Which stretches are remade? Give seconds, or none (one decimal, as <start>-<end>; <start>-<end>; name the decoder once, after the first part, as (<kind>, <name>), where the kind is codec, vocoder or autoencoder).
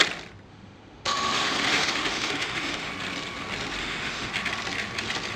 0.5-2.9 (autoencoder, DAC-VAE); 3.8-4.3